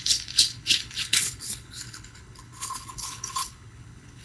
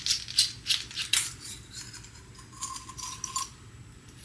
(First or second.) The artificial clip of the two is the first